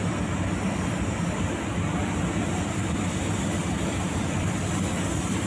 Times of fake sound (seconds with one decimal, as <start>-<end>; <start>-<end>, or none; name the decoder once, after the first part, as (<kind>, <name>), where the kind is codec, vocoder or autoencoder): 2.0-4.7 (vocoder, BigVGAN v2)